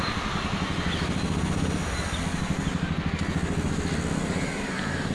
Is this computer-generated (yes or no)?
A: no